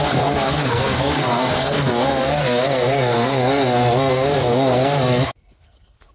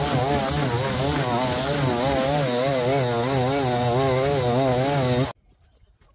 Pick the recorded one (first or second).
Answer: second